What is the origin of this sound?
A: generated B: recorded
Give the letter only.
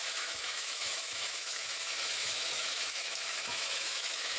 A